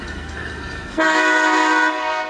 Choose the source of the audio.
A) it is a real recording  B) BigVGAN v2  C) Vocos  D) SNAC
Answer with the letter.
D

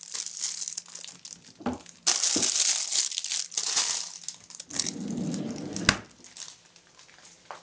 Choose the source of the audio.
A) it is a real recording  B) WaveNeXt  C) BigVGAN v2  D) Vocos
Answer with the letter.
A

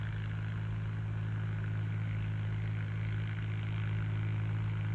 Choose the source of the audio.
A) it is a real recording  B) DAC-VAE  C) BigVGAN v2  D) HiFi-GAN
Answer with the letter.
A